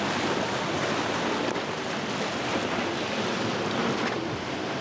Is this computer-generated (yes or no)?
no